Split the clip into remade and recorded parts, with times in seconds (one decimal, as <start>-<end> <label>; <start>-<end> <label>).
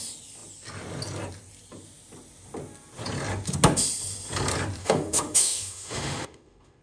0.0-4.8 recorded; 4.8-6.8 remade